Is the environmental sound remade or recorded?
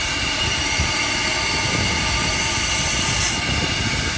recorded